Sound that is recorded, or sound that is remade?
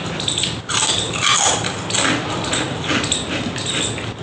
recorded